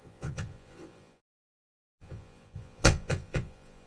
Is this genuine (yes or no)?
no